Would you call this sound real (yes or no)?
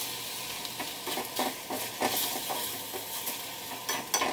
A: yes